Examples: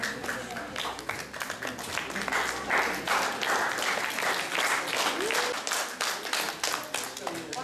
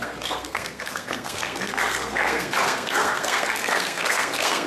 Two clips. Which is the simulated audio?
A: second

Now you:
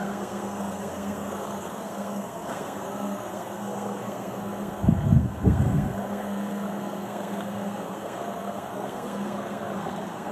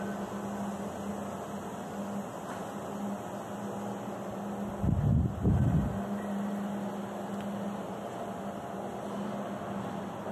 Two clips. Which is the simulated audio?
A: first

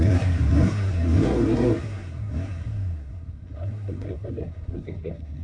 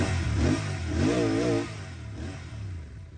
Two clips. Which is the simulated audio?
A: first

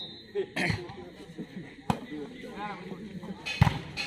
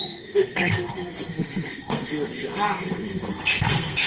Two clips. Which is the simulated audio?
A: second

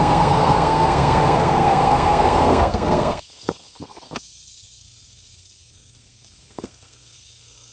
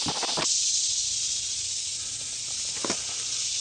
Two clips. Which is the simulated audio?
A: first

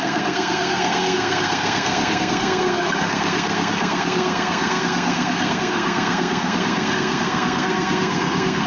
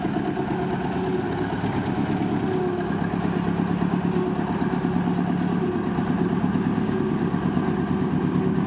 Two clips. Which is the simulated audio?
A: first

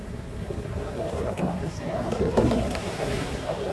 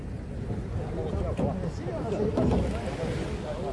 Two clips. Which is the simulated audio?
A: first